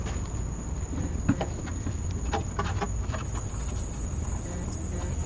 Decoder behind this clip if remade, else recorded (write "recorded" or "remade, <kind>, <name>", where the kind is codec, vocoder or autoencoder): recorded